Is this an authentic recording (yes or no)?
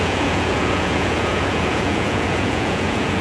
no